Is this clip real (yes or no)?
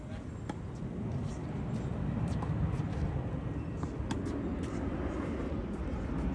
yes